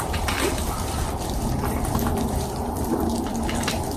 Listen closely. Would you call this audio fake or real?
fake